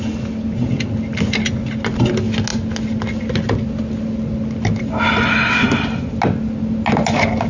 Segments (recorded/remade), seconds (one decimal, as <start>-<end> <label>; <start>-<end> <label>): 0.0-7.5 recorded

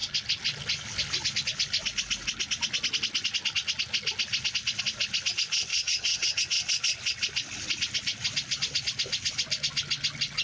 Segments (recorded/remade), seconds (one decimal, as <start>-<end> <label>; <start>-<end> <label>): 0.0-5.7 recorded; 5.7-6.4 remade; 6.4-10.4 recorded

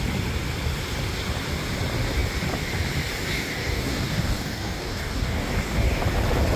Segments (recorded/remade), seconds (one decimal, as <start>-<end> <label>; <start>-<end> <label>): 0.0-3.1 recorded; 3.1-6.0 remade; 6.0-6.6 recorded

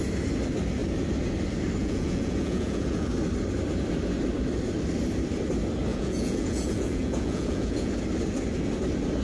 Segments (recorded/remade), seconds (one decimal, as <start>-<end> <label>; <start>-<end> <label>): 0.0-1.8 recorded; 1.8-3.1 remade; 3.1-5.9 recorded; 5.9-7.9 remade; 7.9-9.2 recorded

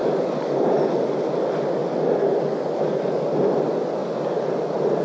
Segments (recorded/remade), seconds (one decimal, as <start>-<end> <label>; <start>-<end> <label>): 0.0-5.0 recorded

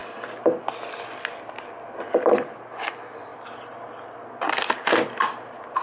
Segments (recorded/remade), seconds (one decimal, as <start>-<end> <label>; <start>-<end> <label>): 0.0-5.8 recorded

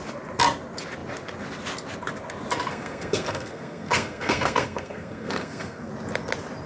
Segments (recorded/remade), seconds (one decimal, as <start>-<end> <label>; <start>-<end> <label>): 0.0-2.7 recorded; 2.7-5.9 remade; 5.9-6.7 recorded

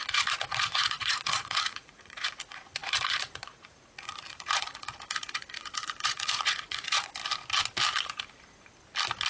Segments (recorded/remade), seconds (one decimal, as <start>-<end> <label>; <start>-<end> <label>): 0.0-7.2 remade; 7.2-9.3 recorded